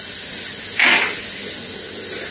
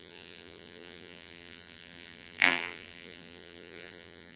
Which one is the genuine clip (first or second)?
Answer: first